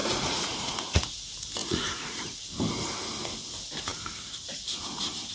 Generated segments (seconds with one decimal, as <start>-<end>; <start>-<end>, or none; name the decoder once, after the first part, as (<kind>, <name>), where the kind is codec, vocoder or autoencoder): 0.0-1.0 (vocoder, Vocos); 1.6-2.4